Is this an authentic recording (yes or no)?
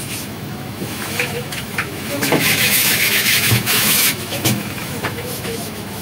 no